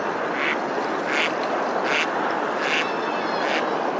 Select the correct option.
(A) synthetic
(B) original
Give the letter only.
B